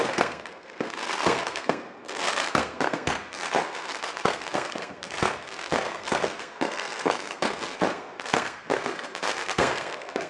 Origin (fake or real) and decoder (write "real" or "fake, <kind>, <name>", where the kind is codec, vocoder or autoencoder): fake, codec, SNAC